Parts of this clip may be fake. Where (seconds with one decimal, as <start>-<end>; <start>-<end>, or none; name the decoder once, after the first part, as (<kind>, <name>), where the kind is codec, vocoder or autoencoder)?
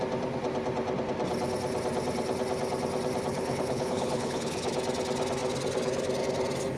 3.3-4.7 (codec, HILCodec)